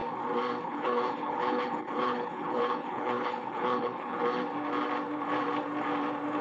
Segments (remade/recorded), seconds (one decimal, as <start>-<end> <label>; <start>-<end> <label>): 0.0-0.6 recorded; 0.6-4.2 remade; 4.2-6.4 recorded